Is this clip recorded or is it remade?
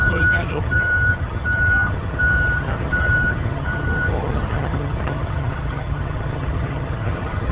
remade